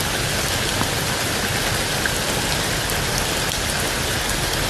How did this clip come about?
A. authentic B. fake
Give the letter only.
A